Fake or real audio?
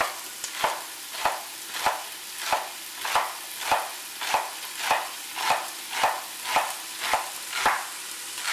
real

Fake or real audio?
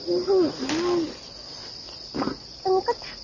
real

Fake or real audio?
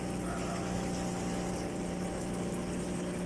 real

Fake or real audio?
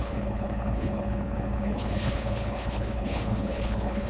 fake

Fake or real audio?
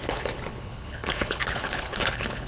fake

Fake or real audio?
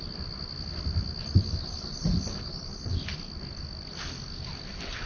real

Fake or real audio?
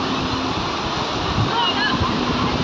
real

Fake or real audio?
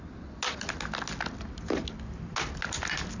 real